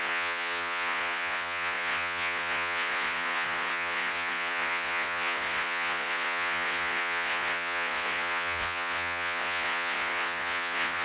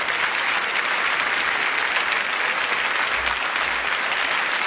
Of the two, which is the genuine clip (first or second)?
second